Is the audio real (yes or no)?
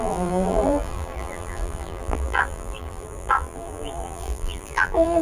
no